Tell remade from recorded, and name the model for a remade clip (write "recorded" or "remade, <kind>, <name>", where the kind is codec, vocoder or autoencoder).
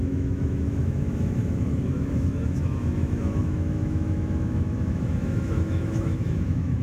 remade, autoencoder, DAC-VAE